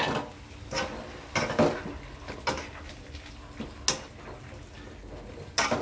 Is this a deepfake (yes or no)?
no